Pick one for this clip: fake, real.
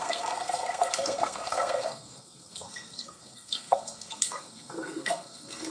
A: fake